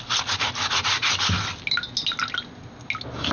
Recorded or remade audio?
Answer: recorded